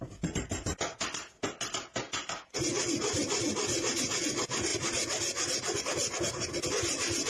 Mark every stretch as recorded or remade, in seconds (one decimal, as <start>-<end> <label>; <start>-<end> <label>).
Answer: 0.0-7.3 recorded